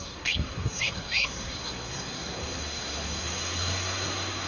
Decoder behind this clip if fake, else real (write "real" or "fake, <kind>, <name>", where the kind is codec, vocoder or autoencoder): fake, codec, SNAC